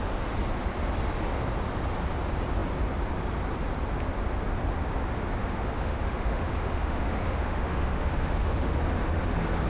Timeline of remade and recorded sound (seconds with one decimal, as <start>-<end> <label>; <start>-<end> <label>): 0.0-5.4 recorded; 5.4-8.8 remade; 8.8-9.7 recorded